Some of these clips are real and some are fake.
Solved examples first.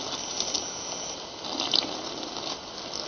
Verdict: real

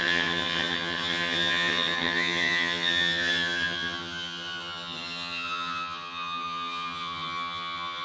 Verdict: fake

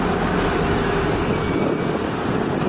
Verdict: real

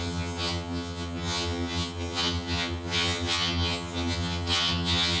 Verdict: fake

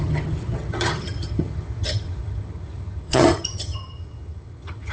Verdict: fake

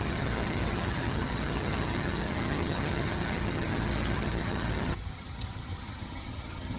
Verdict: fake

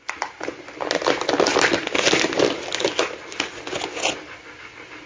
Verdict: real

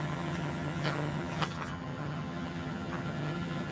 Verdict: fake